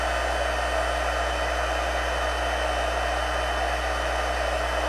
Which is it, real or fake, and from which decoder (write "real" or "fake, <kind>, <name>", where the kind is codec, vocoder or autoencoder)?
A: real